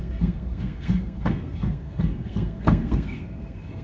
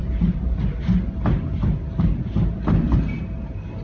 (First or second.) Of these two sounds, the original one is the second